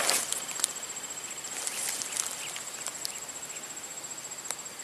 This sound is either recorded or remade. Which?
recorded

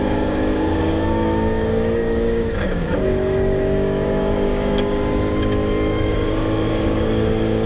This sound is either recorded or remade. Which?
remade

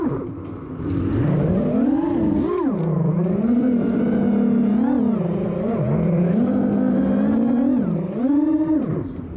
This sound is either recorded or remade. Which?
recorded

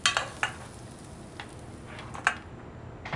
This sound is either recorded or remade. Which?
recorded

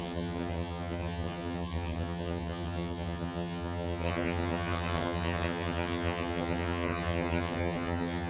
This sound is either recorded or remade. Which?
remade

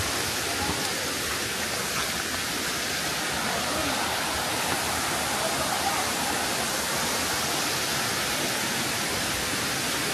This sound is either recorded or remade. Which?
recorded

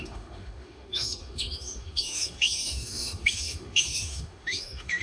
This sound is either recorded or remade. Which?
remade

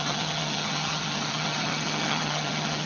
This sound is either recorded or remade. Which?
remade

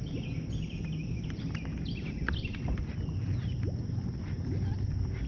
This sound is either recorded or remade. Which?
recorded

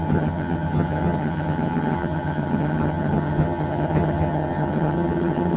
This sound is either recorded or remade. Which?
remade